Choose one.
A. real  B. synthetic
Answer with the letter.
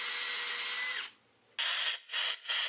A